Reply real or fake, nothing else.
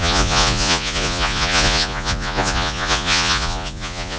fake